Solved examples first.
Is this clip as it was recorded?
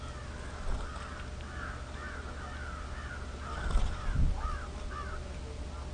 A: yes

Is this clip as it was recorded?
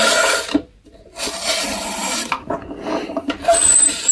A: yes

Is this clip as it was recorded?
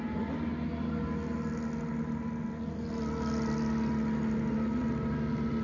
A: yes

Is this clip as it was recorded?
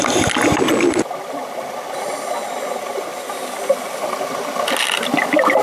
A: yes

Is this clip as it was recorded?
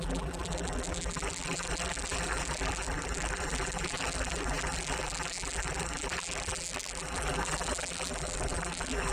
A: no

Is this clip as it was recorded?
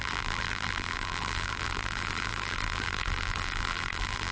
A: no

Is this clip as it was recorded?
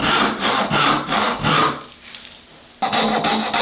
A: yes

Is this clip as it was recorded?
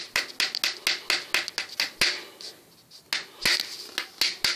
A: yes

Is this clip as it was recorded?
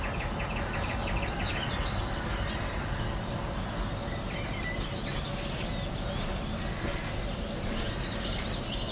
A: yes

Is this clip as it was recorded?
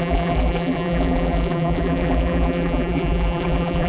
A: no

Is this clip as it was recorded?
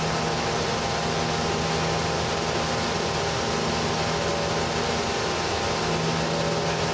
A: yes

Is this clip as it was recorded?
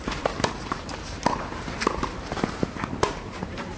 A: no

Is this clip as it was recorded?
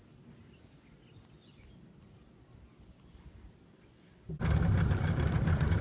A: yes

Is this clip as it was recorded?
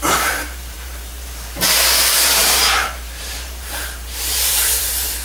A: no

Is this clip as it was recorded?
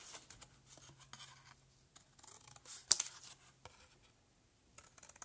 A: yes